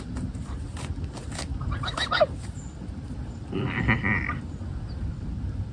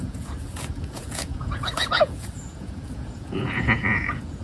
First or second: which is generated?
second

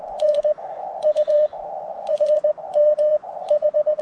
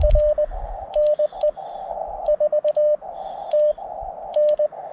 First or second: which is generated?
first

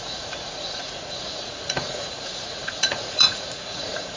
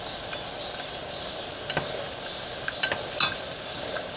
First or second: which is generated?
first